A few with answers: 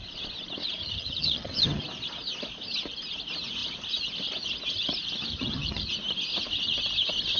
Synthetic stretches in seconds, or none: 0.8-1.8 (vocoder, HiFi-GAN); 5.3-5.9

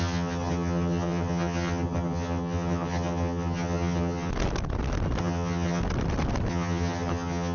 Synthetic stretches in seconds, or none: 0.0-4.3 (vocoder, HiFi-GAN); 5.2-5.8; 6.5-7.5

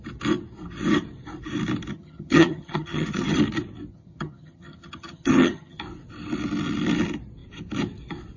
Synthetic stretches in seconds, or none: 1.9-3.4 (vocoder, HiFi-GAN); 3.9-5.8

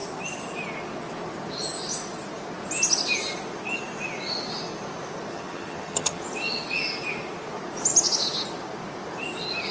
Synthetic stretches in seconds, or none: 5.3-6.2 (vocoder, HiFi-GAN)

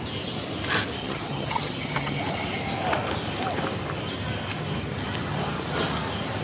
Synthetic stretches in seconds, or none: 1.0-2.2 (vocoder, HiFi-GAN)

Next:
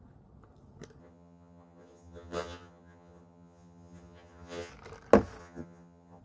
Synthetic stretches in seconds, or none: 1.0-4.7 (vocoder, HiFi-GAN); 5.4-6.2

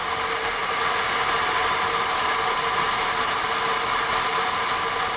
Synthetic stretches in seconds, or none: none

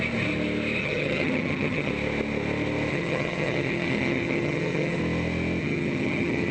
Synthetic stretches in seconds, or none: 0.8-1.9 (vocoder, HiFi-GAN); 2.9-5.0; 5.6-6.5